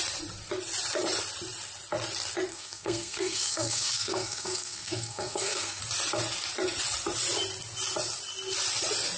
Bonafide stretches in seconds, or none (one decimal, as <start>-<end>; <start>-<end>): 0.0-2.5; 5.8-9.2